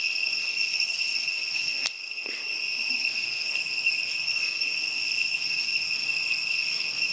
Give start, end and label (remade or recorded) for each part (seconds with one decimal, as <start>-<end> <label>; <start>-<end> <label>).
0.0-2.4 remade; 2.4-2.9 recorded; 2.9-7.1 remade